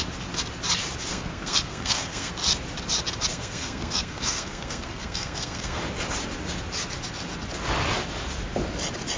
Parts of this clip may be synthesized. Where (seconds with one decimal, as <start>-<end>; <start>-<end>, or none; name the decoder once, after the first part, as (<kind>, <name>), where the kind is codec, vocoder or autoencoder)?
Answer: 1.1-2.3 (codec, SNAC); 3.3-5.8